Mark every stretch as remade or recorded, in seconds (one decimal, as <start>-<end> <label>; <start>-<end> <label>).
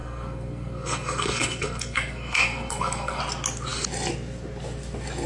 0.0-3.2 remade; 3.2-5.3 recorded